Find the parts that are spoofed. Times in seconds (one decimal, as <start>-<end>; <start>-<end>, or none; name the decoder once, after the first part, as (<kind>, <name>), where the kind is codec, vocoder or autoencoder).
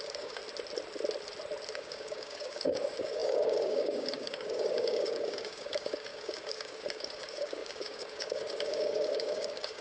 0.0-0.4 (codec, DAC); 1.7-9.8